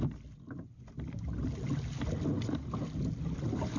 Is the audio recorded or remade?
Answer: recorded